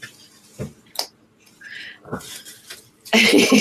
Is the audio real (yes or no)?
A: no